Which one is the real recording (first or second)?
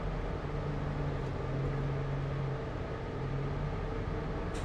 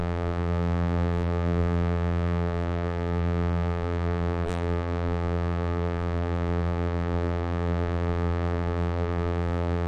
first